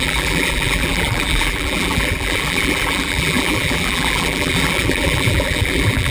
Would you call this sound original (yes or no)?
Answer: no